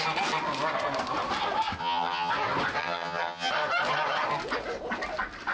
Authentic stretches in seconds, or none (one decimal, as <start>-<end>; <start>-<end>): 0.0-1.8; 2.3-2.8; 3.5-5.5